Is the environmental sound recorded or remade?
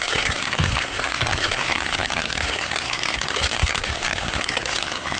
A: remade